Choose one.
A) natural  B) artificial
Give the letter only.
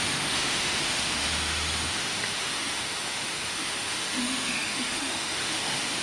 B